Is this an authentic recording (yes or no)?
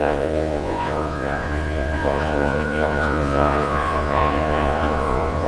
no